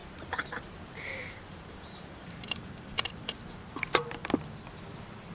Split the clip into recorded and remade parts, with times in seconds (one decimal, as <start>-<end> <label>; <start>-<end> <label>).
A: 0.0-0.6 remade; 0.6-1.2 recorded; 1.2-4.0 remade; 4.0-5.3 recorded